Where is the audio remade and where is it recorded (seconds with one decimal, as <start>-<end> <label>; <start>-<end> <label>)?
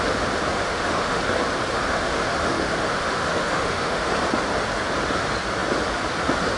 0.0-0.5 recorded; 0.5-1.2 remade; 1.2-1.9 recorded; 1.9-4.1 remade; 4.1-6.6 recorded